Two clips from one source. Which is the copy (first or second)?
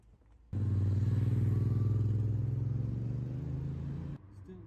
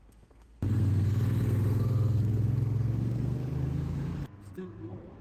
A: second